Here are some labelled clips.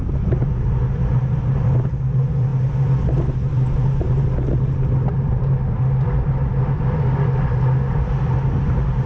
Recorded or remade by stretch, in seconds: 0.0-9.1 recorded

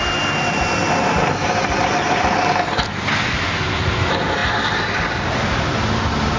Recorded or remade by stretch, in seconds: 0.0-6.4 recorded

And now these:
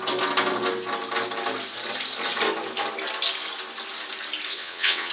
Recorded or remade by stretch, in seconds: 0.0-4.5 recorded; 4.5-5.1 remade

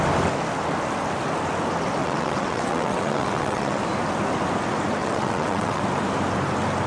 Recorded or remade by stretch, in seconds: 0.0-2.0 recorded; 2.0-3.8 remade; 3.8-5.0 recorded; 5.0-5.8 remade; 5.8-6.9 recorded

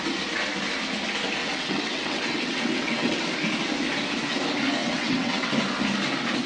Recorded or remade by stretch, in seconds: 0.0-1.4 recorded; 1.4-3.2 remade; 3.2-4.8 recorded; 4.8-5.5 remade; 5.5-6.5 recorded